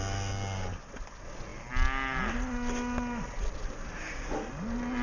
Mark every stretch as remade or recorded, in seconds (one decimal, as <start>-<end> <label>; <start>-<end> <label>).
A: 0.0-5.0 recorded